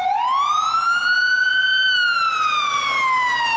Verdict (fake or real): real